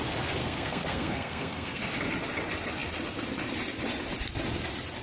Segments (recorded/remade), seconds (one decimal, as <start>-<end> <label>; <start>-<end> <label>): 0.0-0.4 recorded; 0.4-1.8 remade; 1.8-5.0 recorded